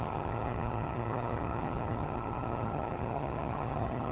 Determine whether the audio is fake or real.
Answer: fake